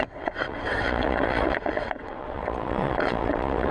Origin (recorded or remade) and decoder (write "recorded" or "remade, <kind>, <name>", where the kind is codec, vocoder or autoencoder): remade, vocoder, WaveNeXt